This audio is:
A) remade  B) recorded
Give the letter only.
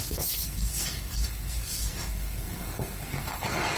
A